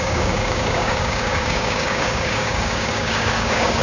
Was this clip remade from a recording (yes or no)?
yes